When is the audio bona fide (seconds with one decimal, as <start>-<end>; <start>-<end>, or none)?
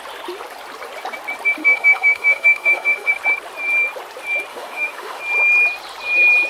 0.0-1.6; 3.1-4.5; 5.2-6.5